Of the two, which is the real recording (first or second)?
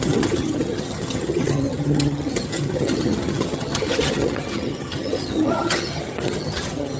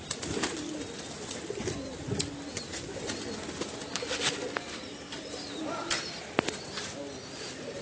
second